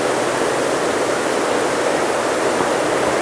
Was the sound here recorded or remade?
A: recorded